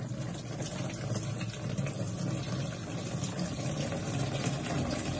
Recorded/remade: recorded